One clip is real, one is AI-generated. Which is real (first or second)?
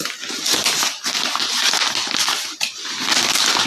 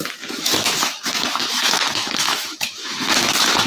first